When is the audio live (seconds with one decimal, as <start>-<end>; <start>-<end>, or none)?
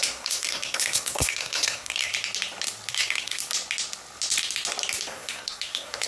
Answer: 2.1-2.9; 3.4-5.1